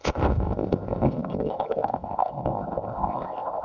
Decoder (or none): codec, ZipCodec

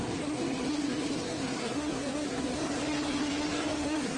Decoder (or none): codec, SNAC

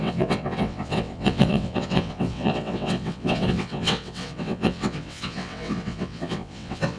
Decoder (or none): vocoder, WaveNeXt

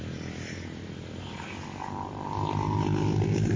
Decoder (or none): none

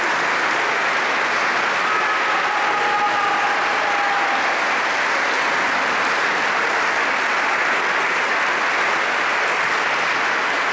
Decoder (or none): none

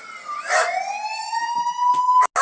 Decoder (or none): none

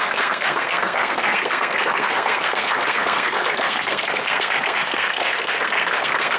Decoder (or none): codec, SNAC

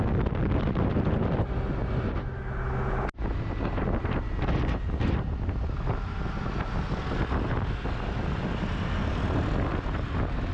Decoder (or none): none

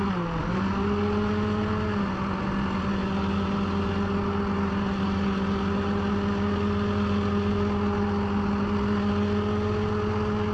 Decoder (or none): none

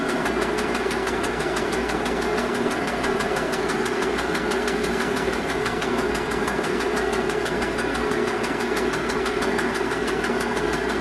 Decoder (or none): codec, SNAC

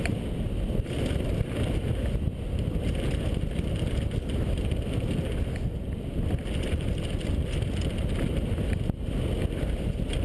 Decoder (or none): none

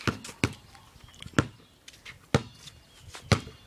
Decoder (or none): none